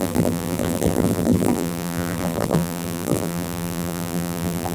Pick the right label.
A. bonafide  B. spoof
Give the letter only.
B